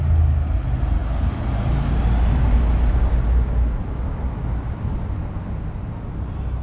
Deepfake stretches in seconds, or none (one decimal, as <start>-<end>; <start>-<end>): none